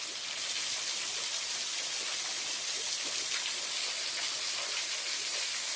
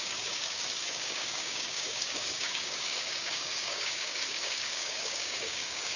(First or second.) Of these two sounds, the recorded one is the first